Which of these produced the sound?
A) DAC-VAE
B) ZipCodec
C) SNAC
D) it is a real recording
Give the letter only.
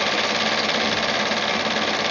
D